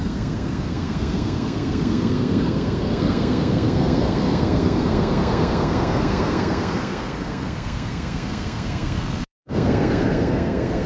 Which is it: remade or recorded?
remade